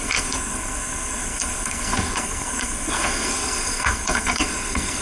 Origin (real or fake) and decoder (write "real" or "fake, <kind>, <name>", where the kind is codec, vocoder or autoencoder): fake, codec, SNAC